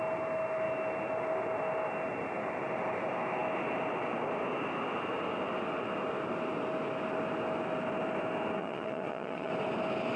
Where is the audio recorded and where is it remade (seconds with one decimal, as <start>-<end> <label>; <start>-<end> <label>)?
0.0-8.6 recorded; 8.6-9.5 remade; 9.5-10.2 recorded